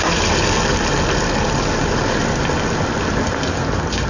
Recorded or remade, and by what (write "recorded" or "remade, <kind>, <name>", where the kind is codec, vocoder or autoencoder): recorded